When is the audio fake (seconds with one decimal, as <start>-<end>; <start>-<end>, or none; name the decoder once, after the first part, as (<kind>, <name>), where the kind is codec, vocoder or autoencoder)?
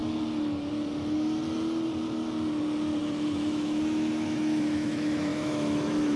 3.0-6.2 (autoencoder, DAC-VAE)